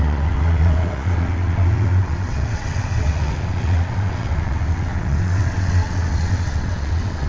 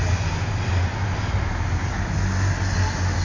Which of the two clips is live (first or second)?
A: second